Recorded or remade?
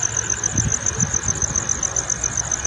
recorded